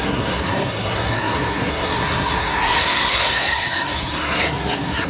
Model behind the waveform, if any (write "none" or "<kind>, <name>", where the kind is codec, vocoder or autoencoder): codec, SNAC